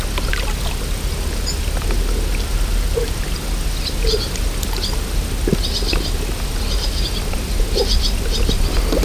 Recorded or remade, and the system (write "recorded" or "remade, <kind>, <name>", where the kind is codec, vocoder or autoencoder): recorded